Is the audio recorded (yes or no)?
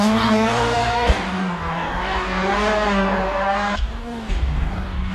no